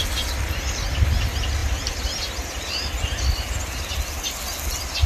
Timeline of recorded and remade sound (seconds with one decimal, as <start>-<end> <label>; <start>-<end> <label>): 0.0-5.1 recorded